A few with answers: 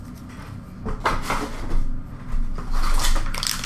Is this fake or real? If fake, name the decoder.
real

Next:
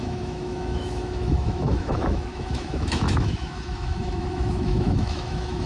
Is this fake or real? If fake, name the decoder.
fake, autoencoder, DAC-VAE